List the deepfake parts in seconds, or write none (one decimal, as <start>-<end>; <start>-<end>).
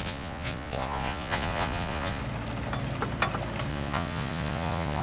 0.0-2.2; 3.7-5.0